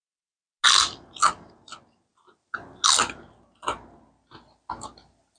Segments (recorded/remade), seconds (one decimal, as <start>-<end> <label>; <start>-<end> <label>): 0.0-5.4 recorded